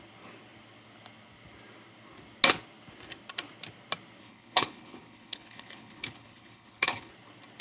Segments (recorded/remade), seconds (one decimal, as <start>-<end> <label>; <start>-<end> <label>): 0.0-4.2 recorded; 4.2-7.1 remade; 7.1-7.6 recorded